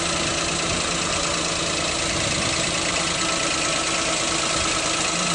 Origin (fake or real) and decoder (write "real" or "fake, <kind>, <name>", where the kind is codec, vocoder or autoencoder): real